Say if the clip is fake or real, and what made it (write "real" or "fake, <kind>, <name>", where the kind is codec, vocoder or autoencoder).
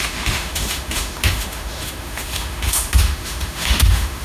fake, autoencoder, DAC-VAE